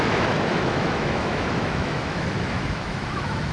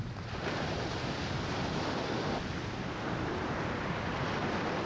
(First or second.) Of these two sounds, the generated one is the first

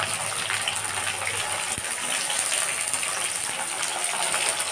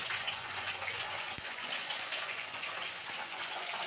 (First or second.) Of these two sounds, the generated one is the second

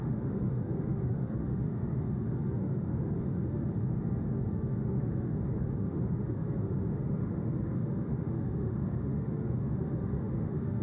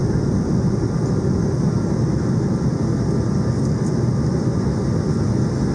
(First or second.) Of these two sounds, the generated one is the first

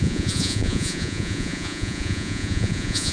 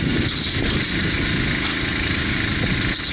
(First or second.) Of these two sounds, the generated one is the first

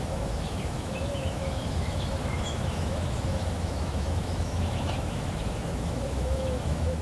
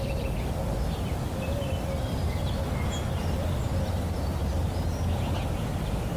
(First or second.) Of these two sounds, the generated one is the first